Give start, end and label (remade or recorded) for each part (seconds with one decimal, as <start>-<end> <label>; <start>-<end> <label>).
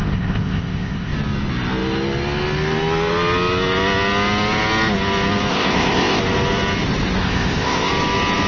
0.0-1.1 remade; 1.1-5.5 recorded; 5.5-6.2 remade; 6.2-7.2 recorded; 7.2-7.9 remade; 7.9-8.5 recorded